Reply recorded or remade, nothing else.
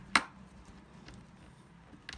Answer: recorded